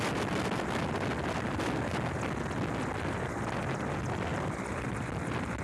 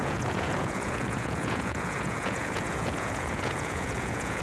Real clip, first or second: first